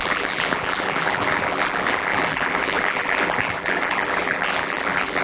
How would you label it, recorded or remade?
remade